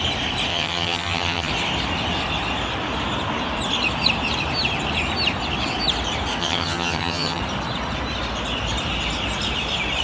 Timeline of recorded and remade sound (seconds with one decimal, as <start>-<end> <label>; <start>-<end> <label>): 0.0-0.5 recorded; 0.5-1.5 remade; 1.5-6.4 recorded; 6.4-7.4 remade; 7.4-10.0 recorded